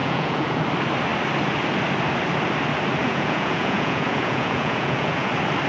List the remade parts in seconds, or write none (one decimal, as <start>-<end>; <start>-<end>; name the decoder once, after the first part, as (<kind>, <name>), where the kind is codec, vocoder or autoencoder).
0.0-0.6 (vocoder, Vocos); 3.0-5.3